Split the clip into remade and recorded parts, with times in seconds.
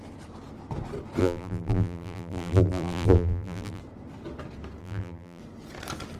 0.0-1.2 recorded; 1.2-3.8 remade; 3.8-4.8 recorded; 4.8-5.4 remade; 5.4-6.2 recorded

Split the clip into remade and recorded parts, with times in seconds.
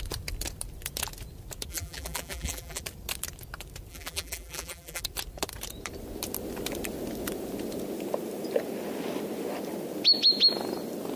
0.0-1.7 recorded; 1.7-2.8 remade; 2.8-3.9 recorded; 3.9-5.0 remade; 5.0-11.2 recorded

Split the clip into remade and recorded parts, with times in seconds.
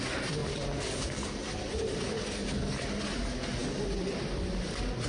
0.0-5.1 recorded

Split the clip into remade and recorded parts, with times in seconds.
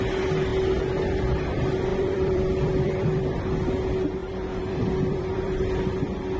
0.0-1.9 recorded; 1.9-3.7 remade; 3.7-4.2 recorded; 4.2-5.8 remade; 5.8-6.4 recorded